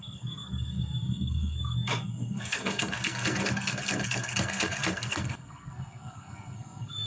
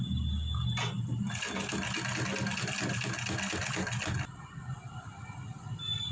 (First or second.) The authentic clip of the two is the second